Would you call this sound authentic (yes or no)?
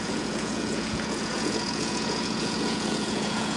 no